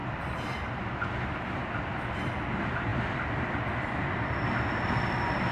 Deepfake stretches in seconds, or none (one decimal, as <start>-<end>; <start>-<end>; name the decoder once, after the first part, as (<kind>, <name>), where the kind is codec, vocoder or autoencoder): none